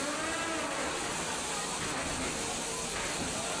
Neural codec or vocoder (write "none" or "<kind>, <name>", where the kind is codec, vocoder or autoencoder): none